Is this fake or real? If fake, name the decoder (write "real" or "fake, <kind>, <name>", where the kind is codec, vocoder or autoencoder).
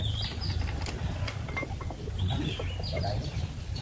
real